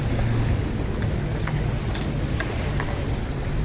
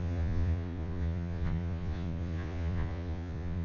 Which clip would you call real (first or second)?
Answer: first